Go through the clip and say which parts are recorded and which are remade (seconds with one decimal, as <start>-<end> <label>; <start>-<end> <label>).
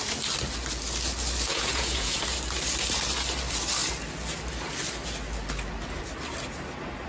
0.0-1.5 recorded; 1.5-2.2 remade; 2.2-7.1 recorded